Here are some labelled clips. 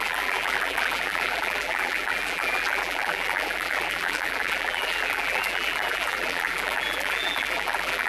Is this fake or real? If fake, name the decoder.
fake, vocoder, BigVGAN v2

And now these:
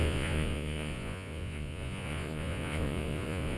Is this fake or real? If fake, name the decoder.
fake, vocoder, Vocos